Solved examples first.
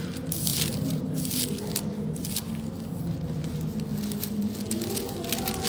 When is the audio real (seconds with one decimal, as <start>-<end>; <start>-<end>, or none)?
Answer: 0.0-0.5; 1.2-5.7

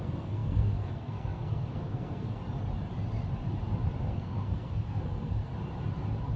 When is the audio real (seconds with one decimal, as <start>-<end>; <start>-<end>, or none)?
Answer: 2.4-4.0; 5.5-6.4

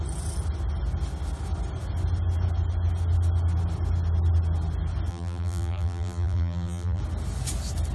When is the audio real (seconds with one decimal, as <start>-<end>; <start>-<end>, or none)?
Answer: 0.0-5.1; 7.0-7.9

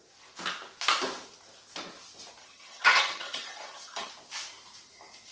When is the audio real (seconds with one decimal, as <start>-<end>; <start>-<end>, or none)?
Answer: 0.0-2.4; 4.1-5.3

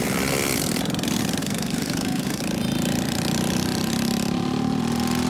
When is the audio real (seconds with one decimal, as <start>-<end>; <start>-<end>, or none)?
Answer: 0.0-1.4; 2.4-5.3

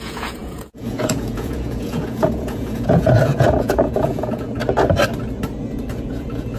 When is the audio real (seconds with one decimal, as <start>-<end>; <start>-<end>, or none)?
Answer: 4.6-5.9

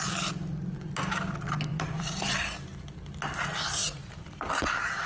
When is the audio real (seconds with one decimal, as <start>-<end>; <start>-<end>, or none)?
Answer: 0.0-1.7; 2.3-3.8; 4.5-5.1

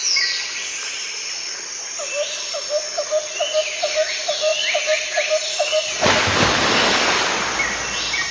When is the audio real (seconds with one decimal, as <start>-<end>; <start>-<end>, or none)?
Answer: 0.0-8.3